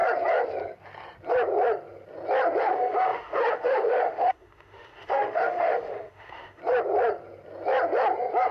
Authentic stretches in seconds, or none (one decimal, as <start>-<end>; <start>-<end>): 0.0-2.6; 6.6-8.5